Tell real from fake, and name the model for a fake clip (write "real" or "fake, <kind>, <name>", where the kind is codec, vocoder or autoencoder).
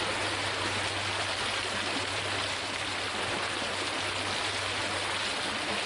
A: real